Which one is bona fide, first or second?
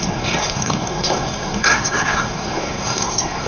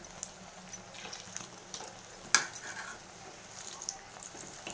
second